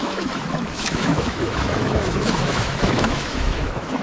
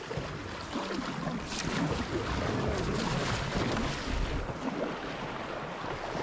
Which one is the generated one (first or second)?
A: first